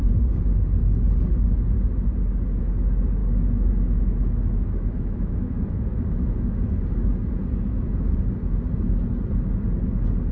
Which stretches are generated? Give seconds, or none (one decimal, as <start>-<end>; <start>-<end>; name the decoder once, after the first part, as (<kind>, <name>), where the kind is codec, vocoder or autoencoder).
3.2-6.8 (autoencoder, DAC-VAE)